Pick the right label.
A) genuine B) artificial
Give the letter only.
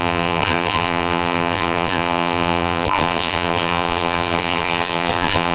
B